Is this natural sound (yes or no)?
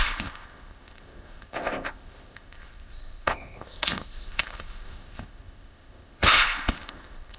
no